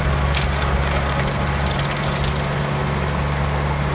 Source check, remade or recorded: recorded